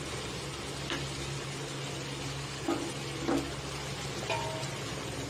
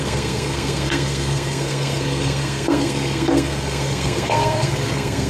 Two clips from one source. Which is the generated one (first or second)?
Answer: second